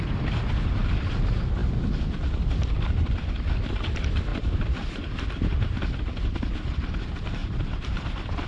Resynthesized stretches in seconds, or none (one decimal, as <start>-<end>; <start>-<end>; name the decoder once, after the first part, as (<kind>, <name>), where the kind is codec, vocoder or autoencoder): 4.3-5.8 (vocoder, BigVGAN v2); 7.4-8.0